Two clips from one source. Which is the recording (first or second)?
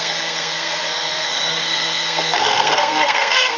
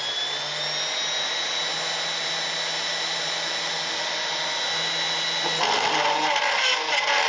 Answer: second